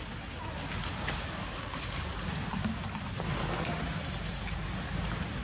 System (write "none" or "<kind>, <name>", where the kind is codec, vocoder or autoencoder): none